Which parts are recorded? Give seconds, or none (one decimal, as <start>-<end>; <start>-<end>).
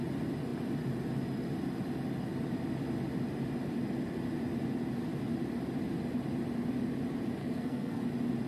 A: 0.0-7.4; 8.0-8.5